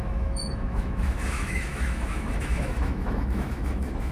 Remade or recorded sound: remade